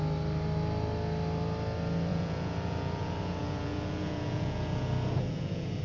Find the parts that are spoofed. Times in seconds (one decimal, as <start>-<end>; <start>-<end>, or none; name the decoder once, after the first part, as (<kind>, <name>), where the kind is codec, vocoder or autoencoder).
2.1-5.8 (vocoder, Vocos)